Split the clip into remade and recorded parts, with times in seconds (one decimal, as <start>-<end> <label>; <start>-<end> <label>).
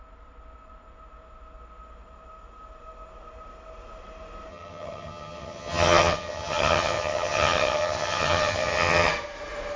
0.0-4.5 recorded; 4.5-9.1 remade; 9.1-9.8 recorded